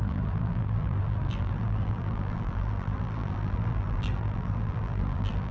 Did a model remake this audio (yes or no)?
yes